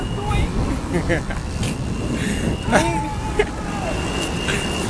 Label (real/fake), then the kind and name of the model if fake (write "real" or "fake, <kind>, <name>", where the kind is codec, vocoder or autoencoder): real